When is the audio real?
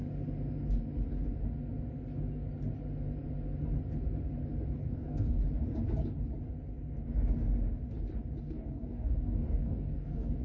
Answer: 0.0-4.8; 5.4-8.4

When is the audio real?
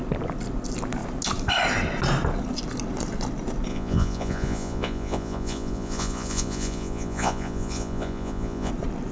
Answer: 0.0-3.7; 8.7-9.1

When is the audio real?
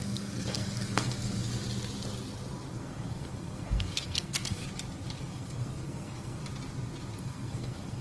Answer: 1.5-2.7; 4.6-5.2; 6.4-7.2